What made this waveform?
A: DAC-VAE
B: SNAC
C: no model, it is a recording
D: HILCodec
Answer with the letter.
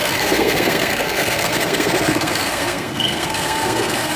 B